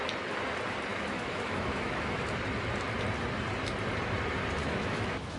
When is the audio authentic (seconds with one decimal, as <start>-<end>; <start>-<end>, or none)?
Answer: 0.0-0.9; 2.3-4.6